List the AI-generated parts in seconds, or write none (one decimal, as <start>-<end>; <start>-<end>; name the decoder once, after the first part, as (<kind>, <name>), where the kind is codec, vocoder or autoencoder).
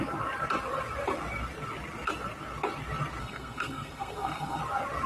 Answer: 3.2-4.6 (codec, SNAC)